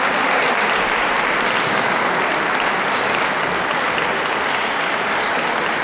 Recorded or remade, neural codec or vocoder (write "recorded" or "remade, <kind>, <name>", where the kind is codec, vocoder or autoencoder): recorded